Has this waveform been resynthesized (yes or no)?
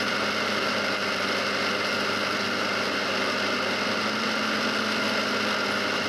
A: no